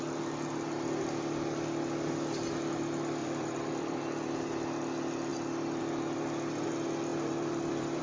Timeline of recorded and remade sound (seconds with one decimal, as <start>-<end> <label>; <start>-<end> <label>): 0.0-3.2 recorded; 3.2-4.0 remade; 4.0-7.1 recorded; 7.1-8.0 remade